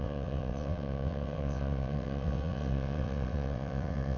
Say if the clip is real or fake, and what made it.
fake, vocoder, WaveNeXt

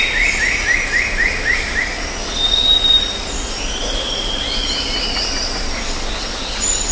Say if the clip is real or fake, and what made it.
real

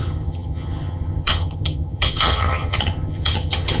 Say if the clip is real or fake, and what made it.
fake, vocoder, HiFi-GAN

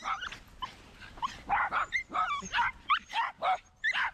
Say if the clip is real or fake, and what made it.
real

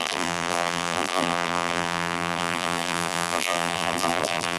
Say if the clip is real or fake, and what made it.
fake, vocoder, BigVGAN v2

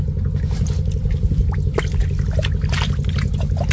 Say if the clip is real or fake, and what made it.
real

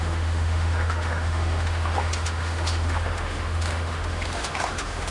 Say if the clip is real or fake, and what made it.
fake, autoencoder, DAC-VAE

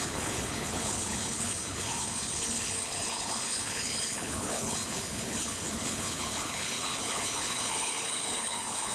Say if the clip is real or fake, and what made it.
fake, codec, HILCodec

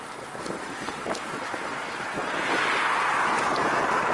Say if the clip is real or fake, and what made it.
real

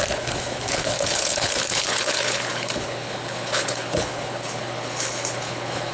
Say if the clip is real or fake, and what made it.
fake, codec, HILCodec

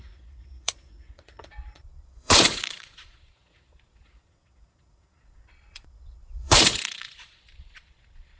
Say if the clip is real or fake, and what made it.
fake, vocoder, Vocos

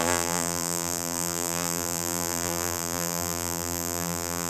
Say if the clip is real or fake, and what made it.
fake, vocoder, BigVGAN v2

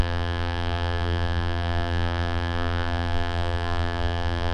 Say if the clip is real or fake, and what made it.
fake, vocoder, BigVGAN v2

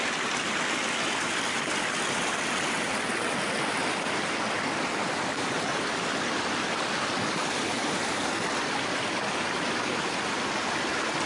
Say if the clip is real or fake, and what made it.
real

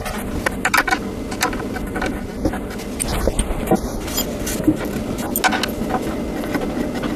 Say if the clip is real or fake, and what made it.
real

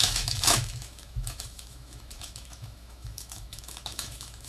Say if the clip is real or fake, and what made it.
fake, autoencoder, DAC-VAE